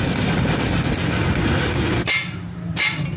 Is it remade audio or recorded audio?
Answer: recorded